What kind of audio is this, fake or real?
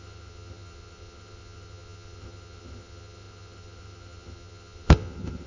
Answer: fake